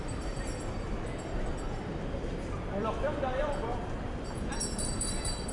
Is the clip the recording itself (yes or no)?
no